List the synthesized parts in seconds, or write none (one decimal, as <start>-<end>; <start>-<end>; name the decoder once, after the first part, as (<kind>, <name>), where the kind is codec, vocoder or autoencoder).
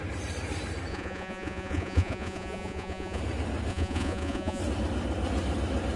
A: 0.9-3.2 (vocoder, Vocos); 3.7-4.6